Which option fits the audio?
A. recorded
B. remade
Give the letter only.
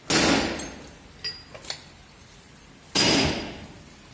A